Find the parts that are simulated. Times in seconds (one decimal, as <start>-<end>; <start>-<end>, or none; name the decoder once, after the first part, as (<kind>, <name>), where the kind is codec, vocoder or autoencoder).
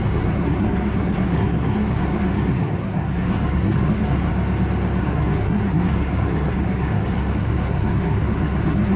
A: 0.0-4.3 (codec, SNAC); 5.0-9.0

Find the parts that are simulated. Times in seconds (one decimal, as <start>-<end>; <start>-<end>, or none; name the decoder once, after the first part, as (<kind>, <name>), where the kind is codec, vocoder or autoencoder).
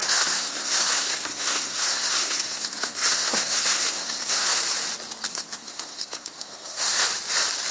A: 0.0-4.6 (codec, SNAC); 5.3-7.1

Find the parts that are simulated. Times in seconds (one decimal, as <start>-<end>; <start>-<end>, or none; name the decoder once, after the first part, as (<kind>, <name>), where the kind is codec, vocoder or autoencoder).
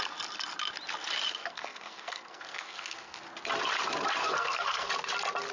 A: 1.4-3.2 (codec, SNAC); 4.2-4.9